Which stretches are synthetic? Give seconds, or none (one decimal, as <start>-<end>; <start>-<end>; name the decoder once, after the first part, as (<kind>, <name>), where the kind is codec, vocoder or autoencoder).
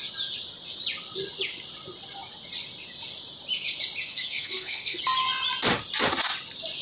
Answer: 4.1-5.0 (codec, SNAC)